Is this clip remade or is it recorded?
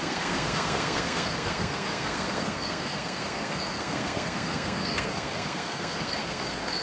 remade